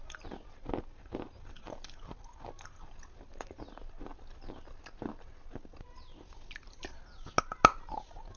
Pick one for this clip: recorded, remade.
recorded